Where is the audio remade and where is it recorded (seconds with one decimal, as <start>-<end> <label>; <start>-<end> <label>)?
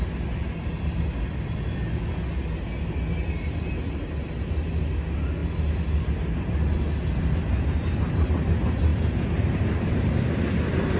0.0-11.0 recorded